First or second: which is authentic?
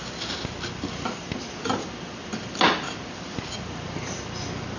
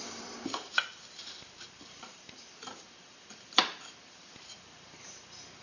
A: first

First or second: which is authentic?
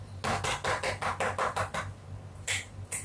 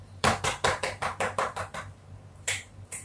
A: first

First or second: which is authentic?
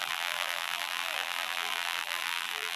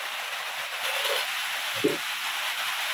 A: second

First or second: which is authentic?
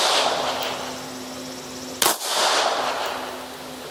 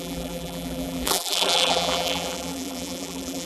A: first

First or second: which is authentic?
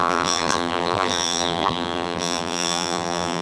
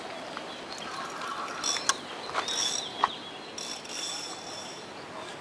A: second